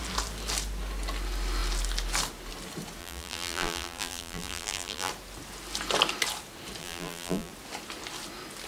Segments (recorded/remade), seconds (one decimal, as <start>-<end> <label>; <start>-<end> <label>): 0.0-3.0 recorded; 3.0-5.1 remade; 5.1-6.8 recorded; 6.8-7.5 remade; 7.5-8.7 recorded

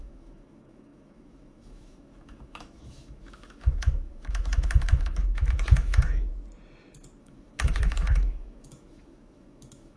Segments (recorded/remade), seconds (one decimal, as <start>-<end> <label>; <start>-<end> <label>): 0.0-6.3 remade; 6.3-7.2 recorded; 7.2-10.0 remade